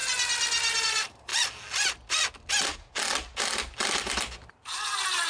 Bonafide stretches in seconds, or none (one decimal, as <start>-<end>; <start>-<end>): 0.0-0.8; 1.3-4.5